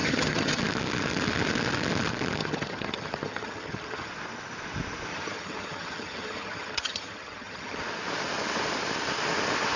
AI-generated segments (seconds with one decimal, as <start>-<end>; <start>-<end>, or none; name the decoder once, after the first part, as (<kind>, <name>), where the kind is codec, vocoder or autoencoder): 0.0-0.6 (vocoder, HiFi-GAN); 2.4-4.1; 5.1-7.8